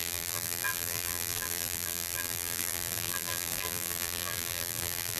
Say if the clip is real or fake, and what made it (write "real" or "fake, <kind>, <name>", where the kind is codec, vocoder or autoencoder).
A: fake, vocoder, BigVGAN v2